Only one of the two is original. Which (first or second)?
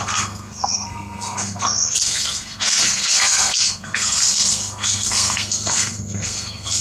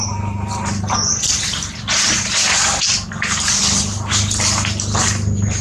second